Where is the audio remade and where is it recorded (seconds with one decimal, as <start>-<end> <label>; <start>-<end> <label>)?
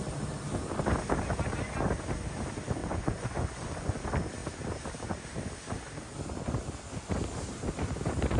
0.0-2.8 recorded; 2.8-4.0 remade; 4.0-8.4 recorded